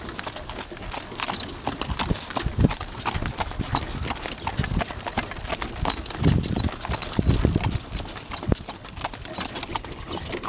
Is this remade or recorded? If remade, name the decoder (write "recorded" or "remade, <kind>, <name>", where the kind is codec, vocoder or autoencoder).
recorded